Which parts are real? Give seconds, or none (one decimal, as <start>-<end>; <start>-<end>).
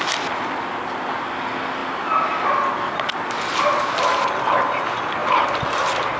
0.0-6.2